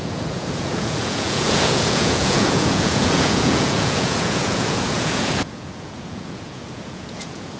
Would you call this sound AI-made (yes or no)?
yes